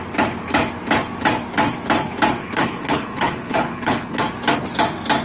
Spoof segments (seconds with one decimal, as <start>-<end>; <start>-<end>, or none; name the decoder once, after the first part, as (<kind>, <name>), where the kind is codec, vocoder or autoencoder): 2.4-4.2 (codec, HILCodec)